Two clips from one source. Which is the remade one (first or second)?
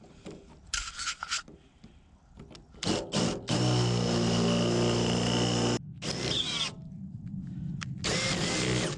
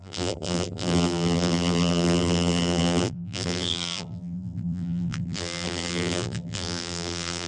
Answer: second